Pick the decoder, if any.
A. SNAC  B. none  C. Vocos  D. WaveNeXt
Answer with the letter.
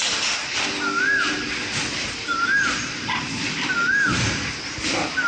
B